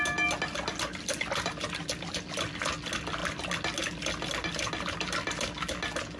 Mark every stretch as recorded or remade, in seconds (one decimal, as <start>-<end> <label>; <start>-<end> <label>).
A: 0.0-6.2 recorded